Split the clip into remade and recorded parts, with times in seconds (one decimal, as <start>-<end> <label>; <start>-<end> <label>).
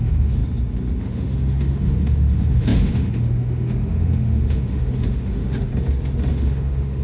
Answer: 0.0-0.4 remade; 0.4-1.0 recorded; 1.0-5.7 remade; 5.7-6.3 recorded; 6.3-7.0 remade